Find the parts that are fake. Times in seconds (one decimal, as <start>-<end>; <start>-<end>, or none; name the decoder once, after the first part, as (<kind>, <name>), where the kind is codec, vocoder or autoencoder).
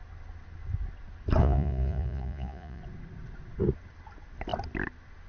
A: 1.4-2.8 (vocoder, Vocos)